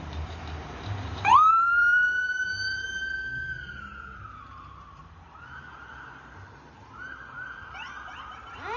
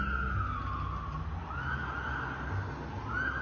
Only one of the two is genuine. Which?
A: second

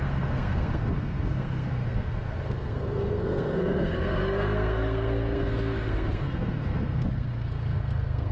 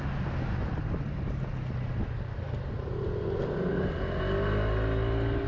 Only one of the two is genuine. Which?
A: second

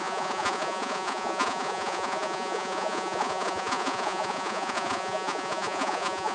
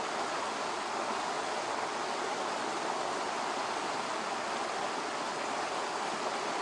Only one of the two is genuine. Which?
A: second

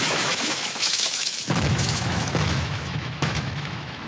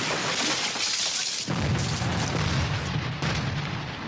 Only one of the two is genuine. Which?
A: second